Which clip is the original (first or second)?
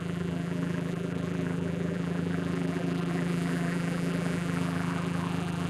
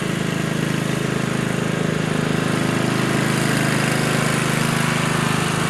second